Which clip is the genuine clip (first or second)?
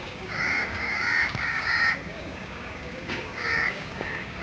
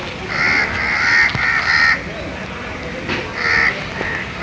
second